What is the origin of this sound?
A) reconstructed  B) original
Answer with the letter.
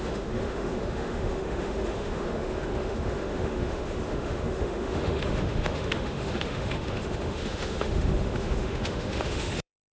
A